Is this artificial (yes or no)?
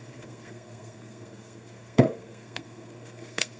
yes